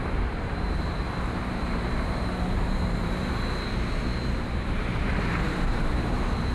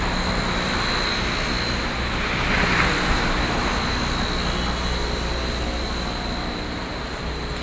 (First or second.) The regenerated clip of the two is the first